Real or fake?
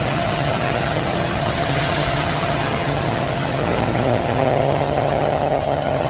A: fake